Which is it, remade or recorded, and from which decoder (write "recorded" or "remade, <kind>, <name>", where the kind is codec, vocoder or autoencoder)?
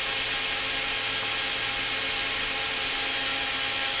recorded